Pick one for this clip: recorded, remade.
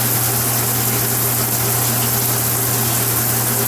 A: recorded